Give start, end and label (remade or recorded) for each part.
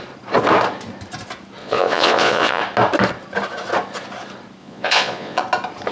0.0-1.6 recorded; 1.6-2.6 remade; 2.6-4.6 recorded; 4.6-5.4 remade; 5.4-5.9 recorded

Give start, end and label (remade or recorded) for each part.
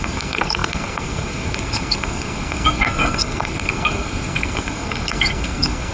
0.0-5.9 remade